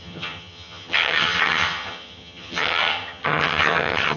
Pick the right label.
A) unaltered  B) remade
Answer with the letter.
B